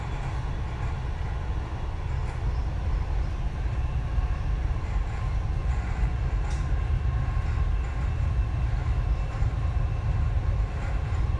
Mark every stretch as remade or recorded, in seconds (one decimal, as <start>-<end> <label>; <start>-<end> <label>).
0.0-5.6 recorded; 5.6-6.3 remade; 6.3-11.4 recorded